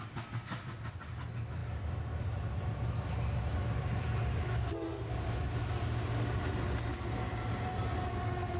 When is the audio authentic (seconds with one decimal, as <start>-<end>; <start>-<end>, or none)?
0.0-8.6